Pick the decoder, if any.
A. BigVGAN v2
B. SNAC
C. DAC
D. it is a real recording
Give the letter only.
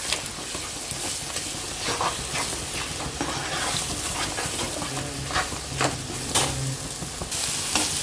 D